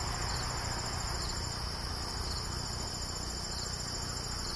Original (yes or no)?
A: yes